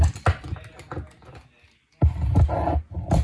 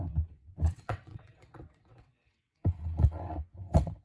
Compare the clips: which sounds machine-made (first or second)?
second